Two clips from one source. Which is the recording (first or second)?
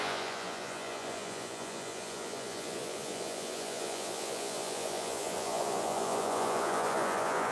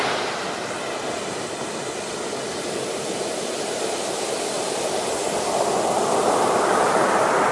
second